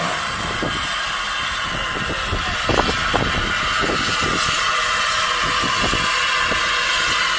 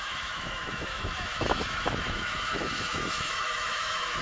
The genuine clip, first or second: first